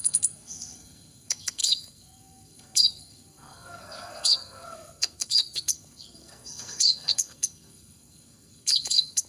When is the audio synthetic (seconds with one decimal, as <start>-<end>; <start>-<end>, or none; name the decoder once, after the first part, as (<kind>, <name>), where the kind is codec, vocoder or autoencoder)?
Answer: 0.0-9.3 (codec, SNAC)